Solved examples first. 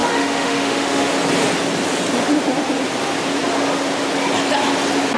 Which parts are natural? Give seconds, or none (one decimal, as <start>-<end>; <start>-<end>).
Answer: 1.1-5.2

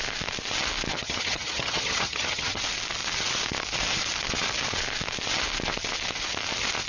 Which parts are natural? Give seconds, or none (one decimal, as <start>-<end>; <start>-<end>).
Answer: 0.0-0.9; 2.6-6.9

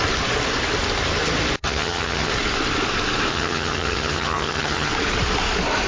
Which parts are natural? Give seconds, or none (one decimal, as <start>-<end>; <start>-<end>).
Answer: 0.0-1.6; 2.3-3.3; 4.9-5.9

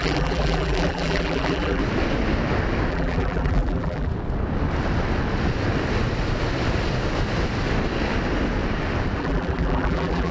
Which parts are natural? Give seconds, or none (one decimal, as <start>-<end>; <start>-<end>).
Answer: 1.8-2.9; 4.1-9.2

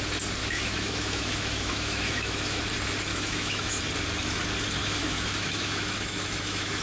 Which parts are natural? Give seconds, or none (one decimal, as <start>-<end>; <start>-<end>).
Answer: 0.0-0.4; 2.6-3.1; 3.8-4.8

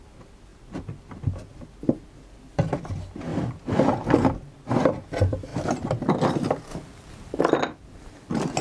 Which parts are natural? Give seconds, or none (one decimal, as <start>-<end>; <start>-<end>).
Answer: 0.0-3.3; 3.9-6.7; 7.4-8.6